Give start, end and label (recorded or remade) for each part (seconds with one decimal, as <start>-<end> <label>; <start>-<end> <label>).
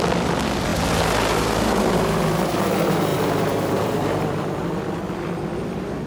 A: 0.0-3.1 recorded; 3.1-5.0 remade; 5.0-6.1 recorded